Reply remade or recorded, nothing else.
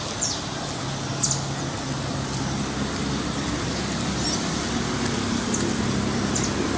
recorded